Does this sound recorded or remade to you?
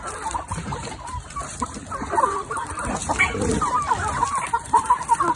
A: remade